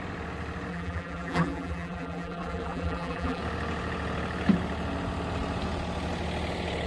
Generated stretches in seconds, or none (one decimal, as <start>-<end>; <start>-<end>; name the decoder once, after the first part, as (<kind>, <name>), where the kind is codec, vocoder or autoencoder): 0.7-3.4 (vocoder, BigVGAN v2)